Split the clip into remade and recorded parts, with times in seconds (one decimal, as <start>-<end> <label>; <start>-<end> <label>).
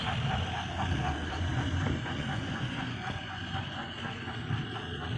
0.0-1.2 recorded; 1.2-4.3 remade; 4.3-5.2 recorded